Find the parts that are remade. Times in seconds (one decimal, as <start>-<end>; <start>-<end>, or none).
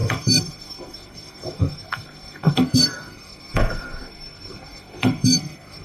0.0-5.8